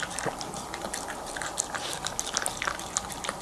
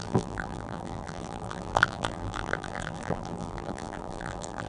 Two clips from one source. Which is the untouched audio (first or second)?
first